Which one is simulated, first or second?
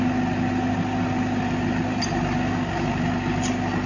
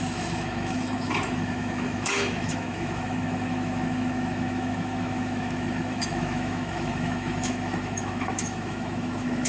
second